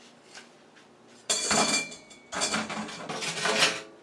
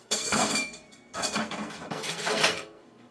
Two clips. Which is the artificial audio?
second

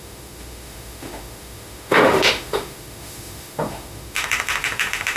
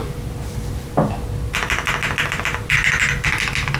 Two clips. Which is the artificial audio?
first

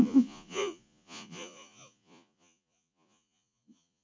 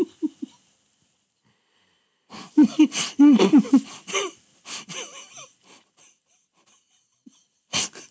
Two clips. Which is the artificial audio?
first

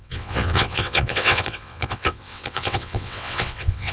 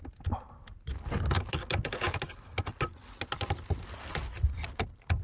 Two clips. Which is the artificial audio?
first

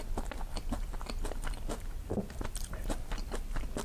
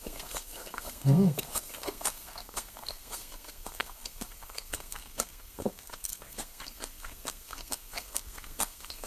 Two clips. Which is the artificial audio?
second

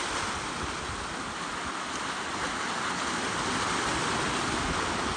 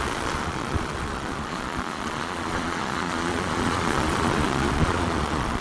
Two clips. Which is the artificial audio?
second